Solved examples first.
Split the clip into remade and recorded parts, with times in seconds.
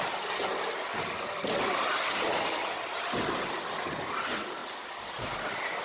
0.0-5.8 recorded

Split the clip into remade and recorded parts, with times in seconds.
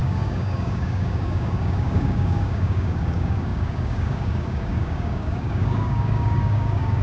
0.0-7.0 remade